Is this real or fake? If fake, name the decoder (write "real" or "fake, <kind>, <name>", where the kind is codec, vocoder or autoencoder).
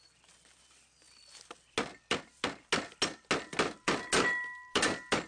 real